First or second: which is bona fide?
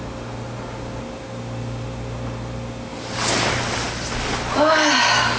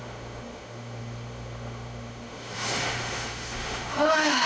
first